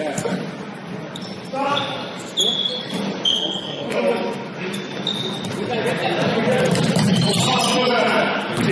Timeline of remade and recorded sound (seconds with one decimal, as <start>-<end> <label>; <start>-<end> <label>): 0.0-3.3 recorded; 3.3-4.0 remade; 4.0-8.7 recorded